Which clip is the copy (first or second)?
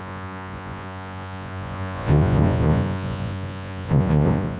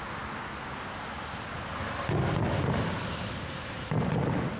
first